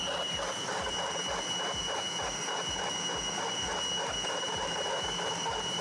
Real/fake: real